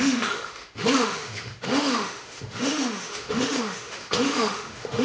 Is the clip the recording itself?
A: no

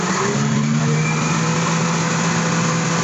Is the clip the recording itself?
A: yes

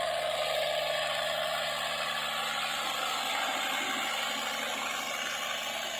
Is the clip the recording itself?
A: yes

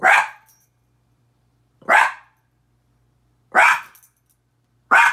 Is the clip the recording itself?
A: yes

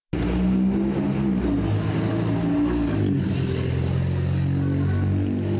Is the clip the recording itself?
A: yes